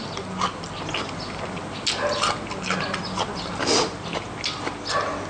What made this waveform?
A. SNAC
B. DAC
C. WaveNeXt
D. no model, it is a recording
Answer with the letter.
D